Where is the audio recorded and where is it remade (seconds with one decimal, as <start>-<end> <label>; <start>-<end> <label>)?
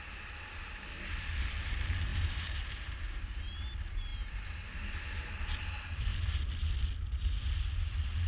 0.0-2.1 recorded; 2.1-3.6 remade; 3.6-8.3 recorded